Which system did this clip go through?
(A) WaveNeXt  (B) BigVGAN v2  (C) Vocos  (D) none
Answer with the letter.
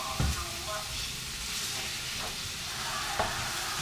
D